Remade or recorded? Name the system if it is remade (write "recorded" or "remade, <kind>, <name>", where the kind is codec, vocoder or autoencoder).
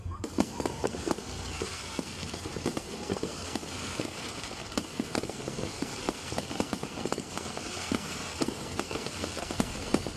remade, codec, SNAC